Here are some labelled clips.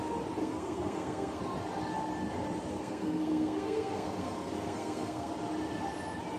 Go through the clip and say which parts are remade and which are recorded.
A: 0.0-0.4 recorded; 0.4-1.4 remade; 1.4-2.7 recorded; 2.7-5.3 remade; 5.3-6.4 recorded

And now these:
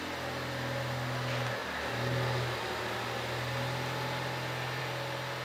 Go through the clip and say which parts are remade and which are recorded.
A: 0.0-5.4 recorded

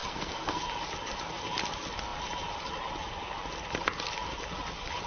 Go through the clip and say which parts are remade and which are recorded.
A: 0.0-0.6 remade; 0.6-5.1 recorded

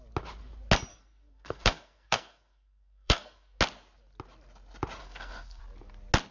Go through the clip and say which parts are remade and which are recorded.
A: 0.0-0.9 recorded; 0.9-3.6 remade; 3.6-5.0 recorded; 5.0-5.6 remade; 5.6-6.3 recorded

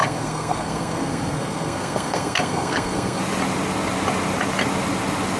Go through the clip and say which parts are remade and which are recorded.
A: 0.0-3.2 remade; 3.2-5.4 recorded

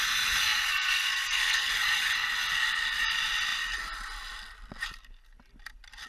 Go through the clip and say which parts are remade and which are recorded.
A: 0.0-0.4 recorded; 0.4-1.7 remade; 1.7-6.1 recorded

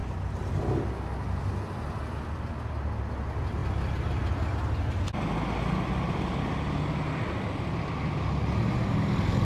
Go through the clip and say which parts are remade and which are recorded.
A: 0.0-9.4 recorded